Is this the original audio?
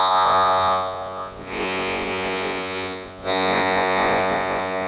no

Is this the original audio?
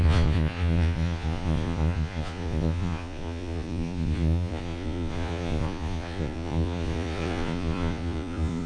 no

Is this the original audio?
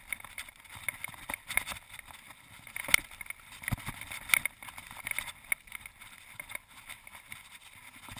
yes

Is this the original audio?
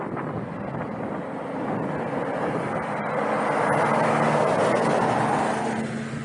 yes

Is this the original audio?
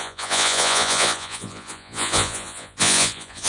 no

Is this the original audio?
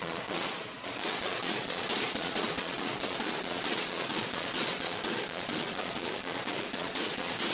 no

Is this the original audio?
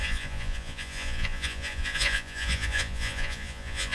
no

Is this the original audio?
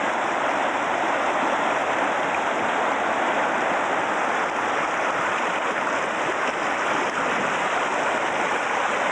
yes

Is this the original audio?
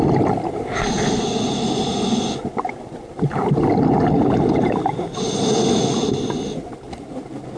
yes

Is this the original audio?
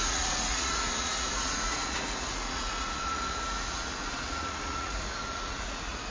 no